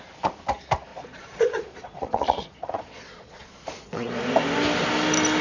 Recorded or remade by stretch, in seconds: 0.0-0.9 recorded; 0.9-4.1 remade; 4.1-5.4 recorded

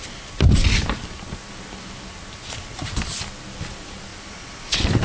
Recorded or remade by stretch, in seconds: 0.0-5.0 recorded